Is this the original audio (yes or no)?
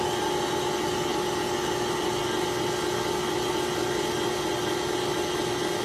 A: yes